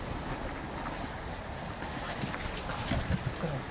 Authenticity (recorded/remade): recorded